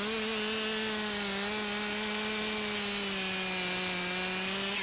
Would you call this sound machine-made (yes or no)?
no